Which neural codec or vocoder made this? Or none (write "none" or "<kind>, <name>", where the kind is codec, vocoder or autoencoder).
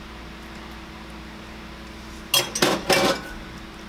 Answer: none